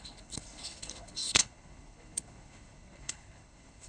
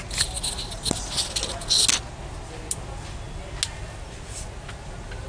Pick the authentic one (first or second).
second